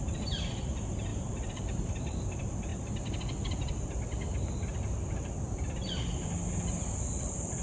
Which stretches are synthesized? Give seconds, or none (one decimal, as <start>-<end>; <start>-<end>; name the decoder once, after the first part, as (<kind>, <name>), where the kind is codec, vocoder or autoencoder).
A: 1.1-1.9 (vocoder, BigVGAN v2)